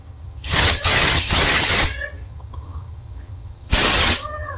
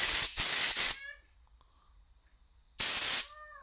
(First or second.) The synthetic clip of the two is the first